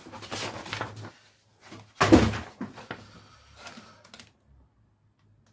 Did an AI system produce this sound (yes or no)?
no